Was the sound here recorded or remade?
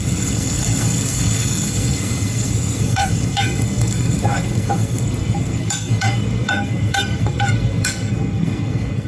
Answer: remade